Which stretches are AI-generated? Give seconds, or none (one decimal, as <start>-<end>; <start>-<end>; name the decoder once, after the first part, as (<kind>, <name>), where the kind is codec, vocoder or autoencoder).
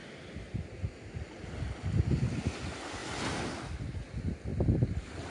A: none